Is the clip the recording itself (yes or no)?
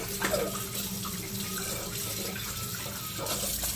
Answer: yes